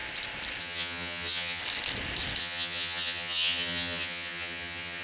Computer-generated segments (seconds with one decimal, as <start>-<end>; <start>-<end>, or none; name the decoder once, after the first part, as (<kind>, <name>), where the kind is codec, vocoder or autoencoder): 0.6-1.6 (vocoder, HiFi-GAN); 2.4-5.0